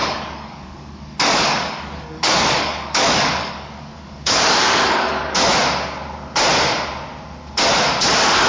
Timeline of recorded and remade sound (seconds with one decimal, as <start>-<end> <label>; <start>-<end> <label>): 0.0-5.5 remade; 5.5-8.1 recorded; 8.1-8.5 remade